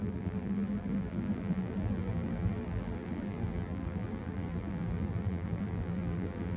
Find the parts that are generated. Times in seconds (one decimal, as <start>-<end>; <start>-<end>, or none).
0.0-6.6